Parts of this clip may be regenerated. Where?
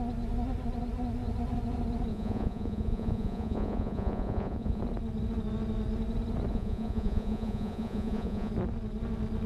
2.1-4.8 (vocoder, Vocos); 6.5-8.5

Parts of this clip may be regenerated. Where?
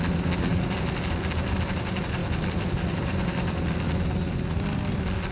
0.5-1.2 (vocoder, BigVGAN v2); 2.2-3.7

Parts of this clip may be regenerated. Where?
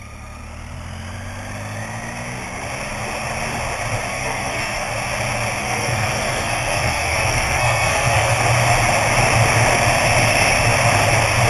4.1-4.9 (codec, SNAC); 5.6-8.4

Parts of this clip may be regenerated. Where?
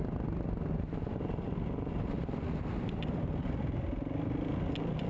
none